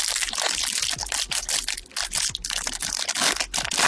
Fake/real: real